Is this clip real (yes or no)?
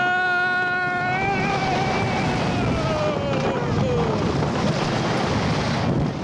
yes